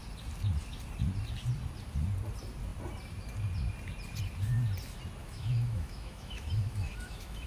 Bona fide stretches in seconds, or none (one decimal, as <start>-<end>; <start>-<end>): 0.0-5.2